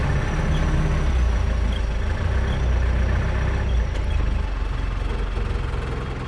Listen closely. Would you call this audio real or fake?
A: real